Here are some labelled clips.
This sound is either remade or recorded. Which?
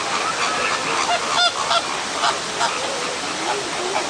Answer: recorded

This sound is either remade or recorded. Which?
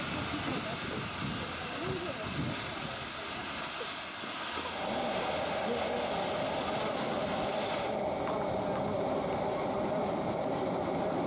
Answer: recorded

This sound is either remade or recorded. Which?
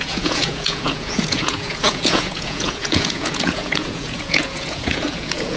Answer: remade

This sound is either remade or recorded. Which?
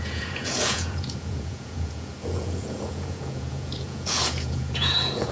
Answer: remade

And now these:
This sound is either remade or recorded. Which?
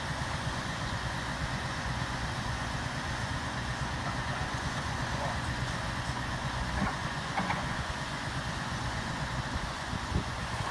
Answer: remade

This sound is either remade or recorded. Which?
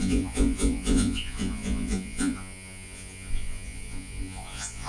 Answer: remade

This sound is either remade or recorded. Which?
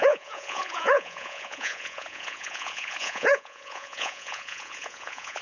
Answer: remade